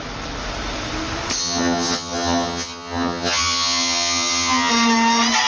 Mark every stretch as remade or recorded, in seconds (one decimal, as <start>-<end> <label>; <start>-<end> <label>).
0.0-1.4 recorded; 1.4-4.7 remade; 4.7-5.5 recorded